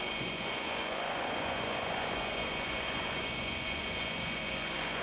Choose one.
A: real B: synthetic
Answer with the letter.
B